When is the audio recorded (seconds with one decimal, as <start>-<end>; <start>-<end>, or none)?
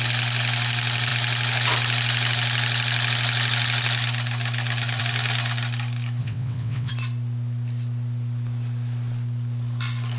0.0-6.2; 6.9-10.2